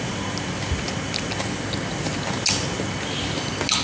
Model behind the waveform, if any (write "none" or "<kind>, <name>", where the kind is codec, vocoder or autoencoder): none